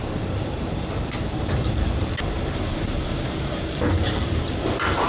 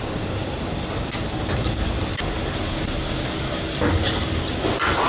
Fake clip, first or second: first